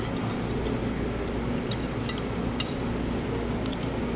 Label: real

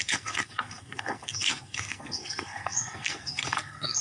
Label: fake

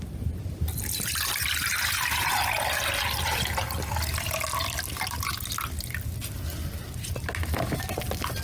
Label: real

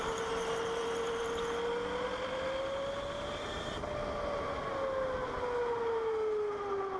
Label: real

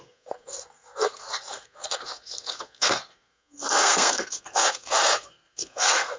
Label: fake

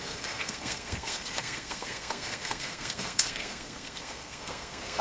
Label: fake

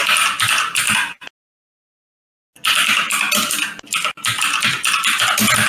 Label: real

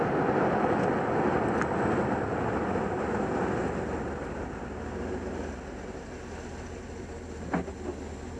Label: real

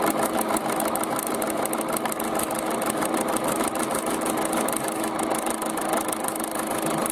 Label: real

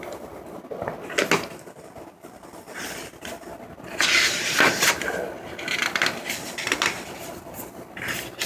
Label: real